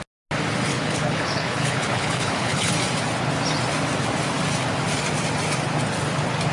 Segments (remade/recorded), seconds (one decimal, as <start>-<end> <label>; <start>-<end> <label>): 0.0-0.7 recorded; 0.7-2.7 remade; 2.7-6.5 recorded